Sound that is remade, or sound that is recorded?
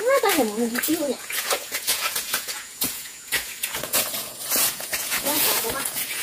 remade